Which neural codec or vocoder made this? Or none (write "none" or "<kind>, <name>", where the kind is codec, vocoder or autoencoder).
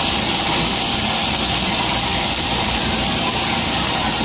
none